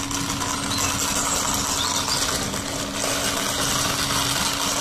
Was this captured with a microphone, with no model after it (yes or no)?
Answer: yes